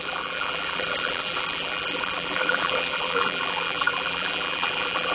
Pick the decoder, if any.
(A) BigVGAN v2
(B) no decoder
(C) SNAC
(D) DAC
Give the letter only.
A